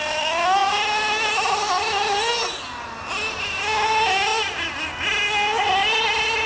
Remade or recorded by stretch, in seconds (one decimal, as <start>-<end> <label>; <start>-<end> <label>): 0.0-6.5 recorded